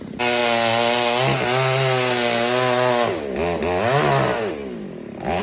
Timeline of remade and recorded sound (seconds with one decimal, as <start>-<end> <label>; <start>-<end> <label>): 0.0-5.4 recorded